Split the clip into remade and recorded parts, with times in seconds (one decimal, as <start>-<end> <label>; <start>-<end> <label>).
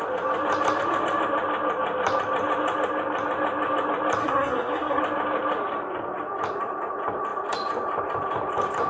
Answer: 0.0-4.2 recorded; 4.2-5.0 remade; 5.0-8.9 recorded